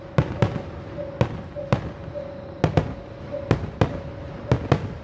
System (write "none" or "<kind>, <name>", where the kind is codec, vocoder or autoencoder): none